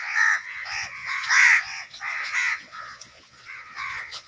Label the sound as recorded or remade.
remade